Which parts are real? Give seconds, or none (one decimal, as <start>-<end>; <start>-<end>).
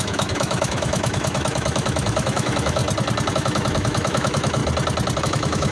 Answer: 2.8-3.3; 4.6-5.2